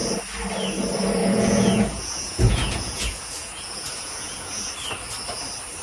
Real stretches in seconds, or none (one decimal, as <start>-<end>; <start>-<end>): 0.0-1.2; 4.7-5.8